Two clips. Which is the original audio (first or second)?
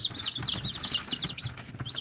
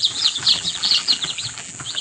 first